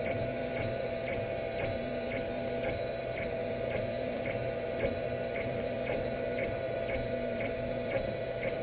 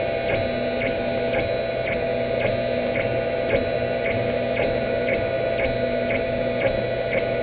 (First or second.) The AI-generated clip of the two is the first